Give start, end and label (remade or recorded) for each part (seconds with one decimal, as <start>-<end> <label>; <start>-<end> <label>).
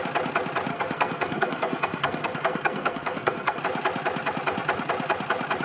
0.0-0.7 recorded; 0.7-3.6 remade; 3.6-5.6 recorded